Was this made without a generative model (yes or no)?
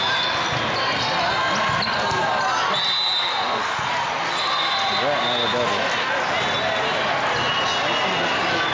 yes